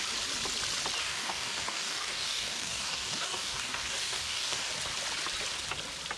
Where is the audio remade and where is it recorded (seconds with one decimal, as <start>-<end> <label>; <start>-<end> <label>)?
0.0-1.0 recorded; 1.0-4.7 remade; 4.7-6.2 recorded